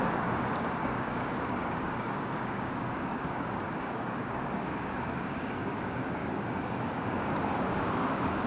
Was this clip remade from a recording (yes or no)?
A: yes